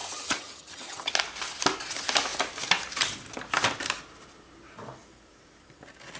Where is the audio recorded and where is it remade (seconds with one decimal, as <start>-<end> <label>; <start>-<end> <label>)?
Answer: 0.0-1.1 remade; 1.1-6.2 recorded